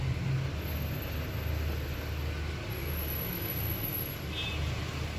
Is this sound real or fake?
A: real